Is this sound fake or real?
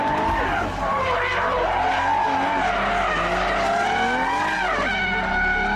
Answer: real